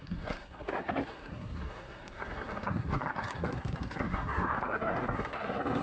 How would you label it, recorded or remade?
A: remade